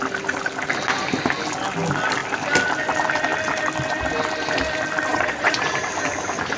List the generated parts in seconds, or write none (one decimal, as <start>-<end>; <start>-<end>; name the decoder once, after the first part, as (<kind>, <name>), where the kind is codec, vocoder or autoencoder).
5.1-5.6 (vocoder, Vocos)